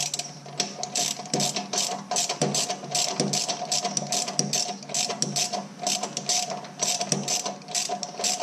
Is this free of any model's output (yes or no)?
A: yes